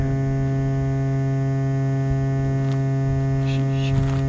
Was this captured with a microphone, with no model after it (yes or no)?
yes